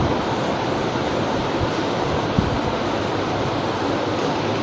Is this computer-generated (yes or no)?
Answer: no